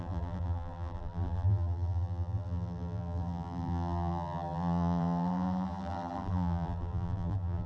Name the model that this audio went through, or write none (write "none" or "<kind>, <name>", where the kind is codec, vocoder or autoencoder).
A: vocoder, BigVGAN v2